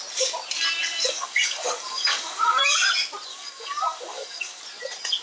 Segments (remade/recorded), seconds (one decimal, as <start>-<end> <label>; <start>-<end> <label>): 0.0-0.8 recorded; 0.8-2.7 remade; 2.7-3.3 recorded; 3.3-4.6 remade; 4.6-5.2 recorded